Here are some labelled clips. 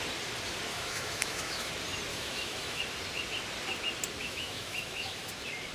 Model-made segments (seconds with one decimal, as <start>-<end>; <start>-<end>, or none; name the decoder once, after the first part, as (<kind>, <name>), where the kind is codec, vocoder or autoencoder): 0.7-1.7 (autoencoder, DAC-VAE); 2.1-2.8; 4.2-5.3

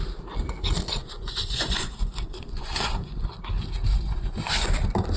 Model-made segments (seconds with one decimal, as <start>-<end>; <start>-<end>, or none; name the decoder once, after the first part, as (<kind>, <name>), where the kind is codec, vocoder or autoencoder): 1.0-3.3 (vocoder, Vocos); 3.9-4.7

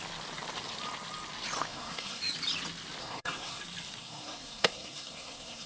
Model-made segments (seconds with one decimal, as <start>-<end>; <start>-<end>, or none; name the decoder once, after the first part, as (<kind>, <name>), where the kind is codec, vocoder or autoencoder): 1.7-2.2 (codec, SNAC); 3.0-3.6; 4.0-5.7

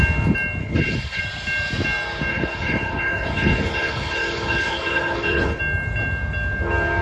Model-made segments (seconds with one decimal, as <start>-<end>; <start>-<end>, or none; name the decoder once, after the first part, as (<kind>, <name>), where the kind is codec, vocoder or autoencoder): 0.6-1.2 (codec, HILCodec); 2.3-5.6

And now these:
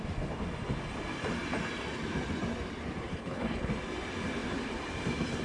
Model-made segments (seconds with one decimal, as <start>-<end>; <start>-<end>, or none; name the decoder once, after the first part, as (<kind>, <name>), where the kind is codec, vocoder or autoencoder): 3.1-3.7 (codec, HILCodec)

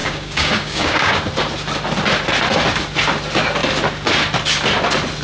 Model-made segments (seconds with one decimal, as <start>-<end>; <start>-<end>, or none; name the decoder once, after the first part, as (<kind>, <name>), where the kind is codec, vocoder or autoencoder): 0.0-1.2 (codec, DAC)

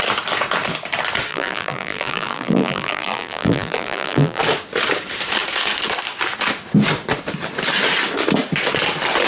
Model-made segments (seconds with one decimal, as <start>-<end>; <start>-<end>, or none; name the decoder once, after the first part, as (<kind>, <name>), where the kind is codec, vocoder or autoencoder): 1.3-4.4 (vocoder, BigVGAN v2)

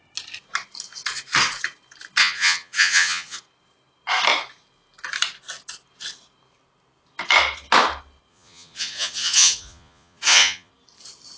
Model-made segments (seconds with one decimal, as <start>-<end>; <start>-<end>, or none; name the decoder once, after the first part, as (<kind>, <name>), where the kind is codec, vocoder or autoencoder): 2.2-3.4 (vocoder, Vocos); 8.3-10.7